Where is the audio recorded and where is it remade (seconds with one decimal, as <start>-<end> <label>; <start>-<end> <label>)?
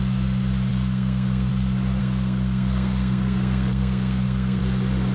0.0-0.7 recorded; 0.7-1.5 remade; 1.5-2.0 recorded; 2.0-4.6 remade; 4.6-5.1 recorded